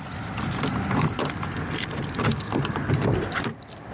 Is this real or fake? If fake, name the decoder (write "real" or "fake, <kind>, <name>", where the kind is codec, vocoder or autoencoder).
fake, vocoder, BigVGAN v2